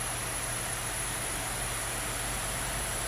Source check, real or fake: fake